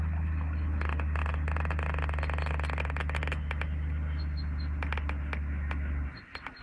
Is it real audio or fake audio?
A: real